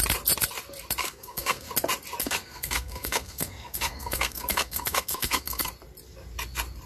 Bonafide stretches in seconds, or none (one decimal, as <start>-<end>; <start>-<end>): 0.0-1.0; 1.7-2.2; 5.7-6.9